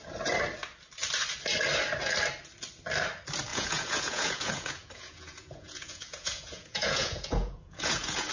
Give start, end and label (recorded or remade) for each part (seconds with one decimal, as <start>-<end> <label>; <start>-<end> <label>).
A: 0.0-3.5 recorded; 3.5-8.3 remade